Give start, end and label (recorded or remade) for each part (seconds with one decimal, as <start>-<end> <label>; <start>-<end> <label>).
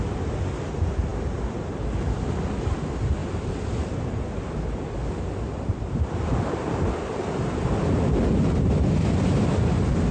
0.0-10.1 recorded